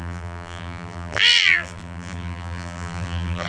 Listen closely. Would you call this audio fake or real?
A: fake